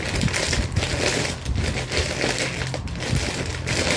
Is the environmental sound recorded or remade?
recorded